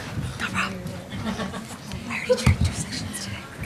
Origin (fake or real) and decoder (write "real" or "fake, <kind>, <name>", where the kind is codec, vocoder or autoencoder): real